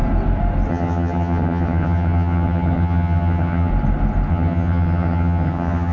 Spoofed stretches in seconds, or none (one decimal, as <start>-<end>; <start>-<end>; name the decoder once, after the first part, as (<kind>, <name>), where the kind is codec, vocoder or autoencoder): 0.7-3.7 (vocoder, HiFi-GAN); 4.3-5.9